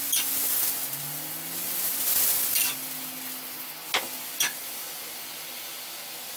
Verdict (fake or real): real